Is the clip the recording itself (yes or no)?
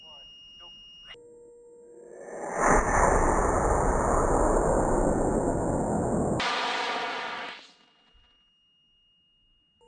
yes